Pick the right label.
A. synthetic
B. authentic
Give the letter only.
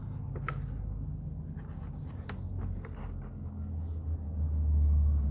B